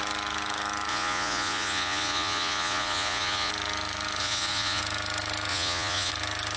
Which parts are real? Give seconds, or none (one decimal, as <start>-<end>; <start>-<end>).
0.0-0.9; 3.5-4.2; 4.8-5.5; 6.1-6.6